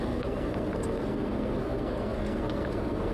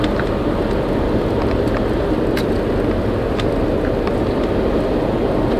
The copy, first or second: first